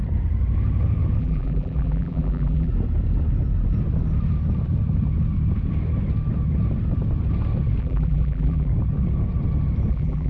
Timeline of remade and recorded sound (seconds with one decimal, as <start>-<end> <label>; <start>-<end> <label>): 0.0-1.2 recorded; 1.2-2.7 remade; 2.7-7.8 recorded; 7.8-8.7 remade; 8.7-9.9 recorded; 9.9-10.3 remade